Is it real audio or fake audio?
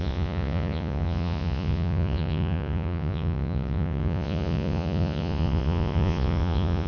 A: fake